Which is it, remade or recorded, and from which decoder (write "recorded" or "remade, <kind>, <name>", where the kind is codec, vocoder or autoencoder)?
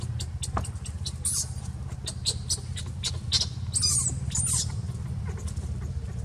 recorded